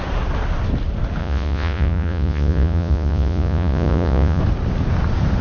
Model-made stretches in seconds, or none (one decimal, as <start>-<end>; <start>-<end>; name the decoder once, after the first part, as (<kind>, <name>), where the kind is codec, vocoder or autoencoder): 1.2-4.4 (vocoder, Vocos)

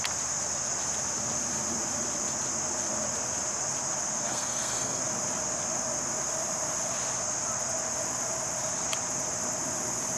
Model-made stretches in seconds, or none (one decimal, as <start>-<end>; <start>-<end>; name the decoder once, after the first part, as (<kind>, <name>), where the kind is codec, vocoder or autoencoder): 4.3-5.0 (codec, SNAC)

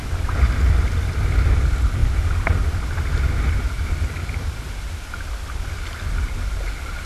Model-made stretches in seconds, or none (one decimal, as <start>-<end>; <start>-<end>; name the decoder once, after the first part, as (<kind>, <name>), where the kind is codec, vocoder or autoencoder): none

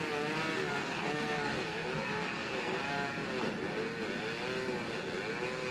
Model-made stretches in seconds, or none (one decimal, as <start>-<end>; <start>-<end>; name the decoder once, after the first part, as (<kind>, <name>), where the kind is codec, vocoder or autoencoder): 0.7-2.8 (codec, SNAC)

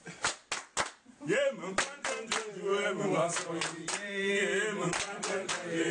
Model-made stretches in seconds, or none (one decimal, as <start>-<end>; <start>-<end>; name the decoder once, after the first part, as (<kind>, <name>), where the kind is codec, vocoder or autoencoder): 2.7-5.5 (vocoder, BigVGAN v2)

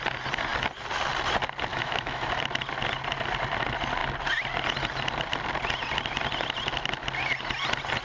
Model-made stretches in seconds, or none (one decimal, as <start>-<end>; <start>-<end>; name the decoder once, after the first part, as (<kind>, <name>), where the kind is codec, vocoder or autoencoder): 1.7-2.4 (autoencoder, DAC-VAE)

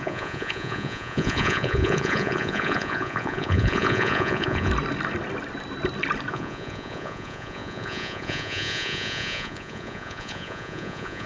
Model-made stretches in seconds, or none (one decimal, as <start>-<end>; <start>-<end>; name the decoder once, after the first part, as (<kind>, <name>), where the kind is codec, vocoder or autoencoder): 0.0-4.7 (vocoder, Vocos); 6.3-11.3

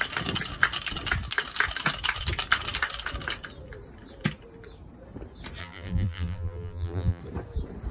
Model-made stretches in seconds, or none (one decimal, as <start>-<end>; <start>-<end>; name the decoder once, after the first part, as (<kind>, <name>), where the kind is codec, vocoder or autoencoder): 5.6-7.2 (vocoder, BigVGAN v2)